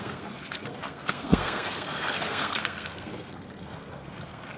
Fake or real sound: fake